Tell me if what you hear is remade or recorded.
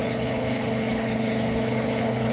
remade